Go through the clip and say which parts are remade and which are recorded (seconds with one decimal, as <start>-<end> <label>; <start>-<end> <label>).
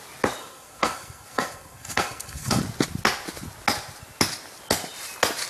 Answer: 0.0-0.4 recorded; 0.4-2.6 remade; 2.6-5.5 recorded